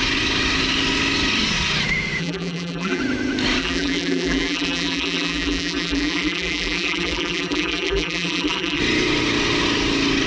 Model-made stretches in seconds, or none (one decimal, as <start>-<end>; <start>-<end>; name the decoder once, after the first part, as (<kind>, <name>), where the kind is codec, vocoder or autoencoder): 2.2-3.0 (vocoder, BigVGAN v2); 3.6-8.8